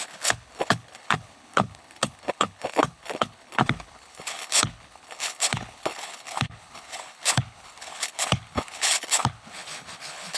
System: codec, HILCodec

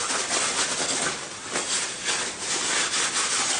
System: none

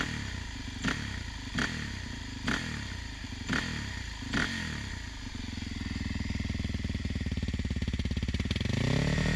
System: none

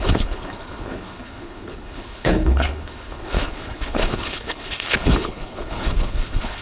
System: codec, HILCodec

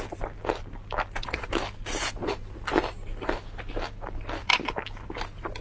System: none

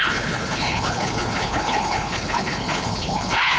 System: codec, HILCodec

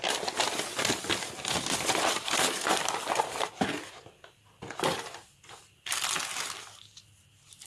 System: none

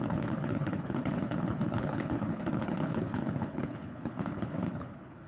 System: codec, HILCodec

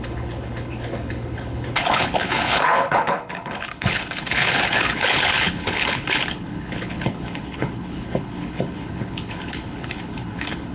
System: codec, HILCodec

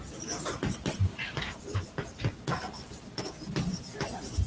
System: none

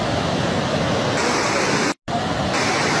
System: none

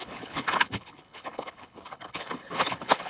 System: codec, HILCodec